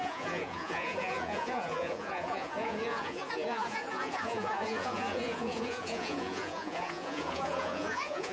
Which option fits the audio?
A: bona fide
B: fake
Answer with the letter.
B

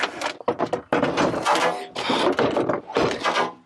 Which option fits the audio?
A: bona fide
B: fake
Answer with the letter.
A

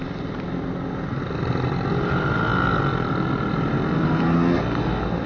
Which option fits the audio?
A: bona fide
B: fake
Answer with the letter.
A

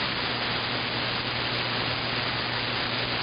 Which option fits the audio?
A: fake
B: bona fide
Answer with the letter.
B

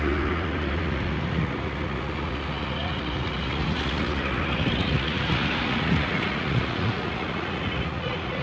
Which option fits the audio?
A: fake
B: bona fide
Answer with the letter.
A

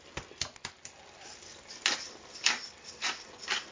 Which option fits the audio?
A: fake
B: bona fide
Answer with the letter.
B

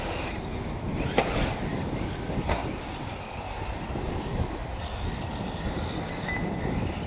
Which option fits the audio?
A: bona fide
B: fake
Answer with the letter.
A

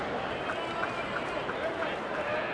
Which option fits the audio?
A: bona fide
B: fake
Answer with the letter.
A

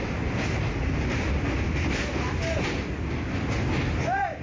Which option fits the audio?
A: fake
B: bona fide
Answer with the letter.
B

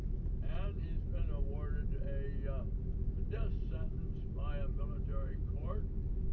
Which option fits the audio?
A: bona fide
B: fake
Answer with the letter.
A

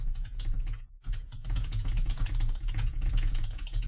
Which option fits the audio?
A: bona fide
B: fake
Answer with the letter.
B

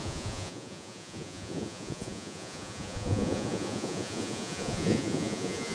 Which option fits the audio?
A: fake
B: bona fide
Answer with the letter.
A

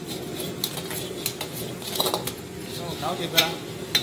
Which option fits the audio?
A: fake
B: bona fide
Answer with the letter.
B